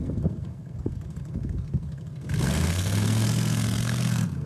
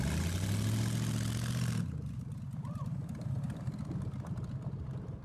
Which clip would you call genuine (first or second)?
second